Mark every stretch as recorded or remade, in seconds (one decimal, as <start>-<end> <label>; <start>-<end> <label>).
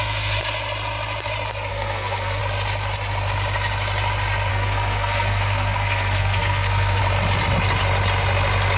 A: 0.0-1.7 recorded; 1.7-2.4 remade; 2.4-4.5 recorded; 4.5-7.0 remade; 7.0-8.8 recorded